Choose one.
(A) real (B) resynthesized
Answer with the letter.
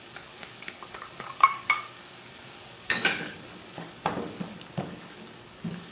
B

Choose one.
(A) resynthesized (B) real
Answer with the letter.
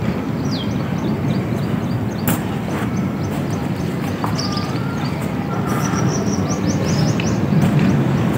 B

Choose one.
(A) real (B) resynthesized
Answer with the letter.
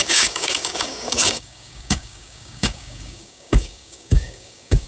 B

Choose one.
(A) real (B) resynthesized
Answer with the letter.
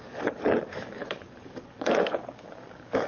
B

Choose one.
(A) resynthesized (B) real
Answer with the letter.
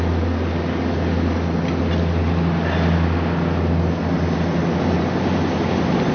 B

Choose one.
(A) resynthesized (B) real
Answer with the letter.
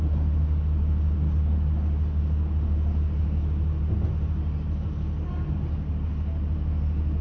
B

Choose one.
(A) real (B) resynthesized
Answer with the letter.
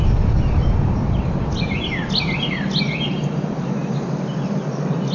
A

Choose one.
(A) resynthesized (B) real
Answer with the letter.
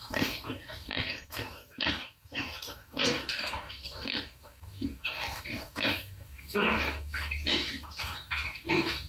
A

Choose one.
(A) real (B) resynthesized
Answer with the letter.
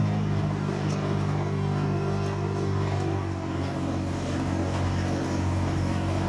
B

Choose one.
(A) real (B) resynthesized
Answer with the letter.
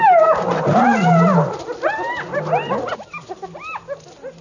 A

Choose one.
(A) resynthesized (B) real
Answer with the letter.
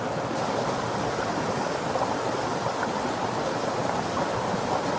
B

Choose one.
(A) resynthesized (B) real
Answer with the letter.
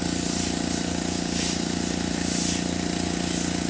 B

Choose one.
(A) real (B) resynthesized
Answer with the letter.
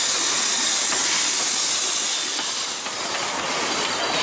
A